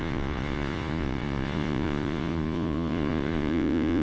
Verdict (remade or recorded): remade